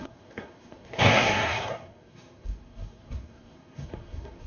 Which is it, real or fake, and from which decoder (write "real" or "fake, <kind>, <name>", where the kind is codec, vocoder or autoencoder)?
fake, codec, SNAC